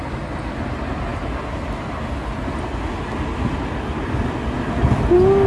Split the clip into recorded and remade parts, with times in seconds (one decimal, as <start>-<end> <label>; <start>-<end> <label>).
0.0-5.5 recorded